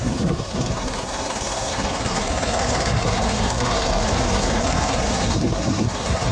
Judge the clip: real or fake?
fake